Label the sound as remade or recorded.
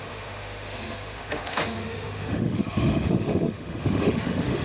remade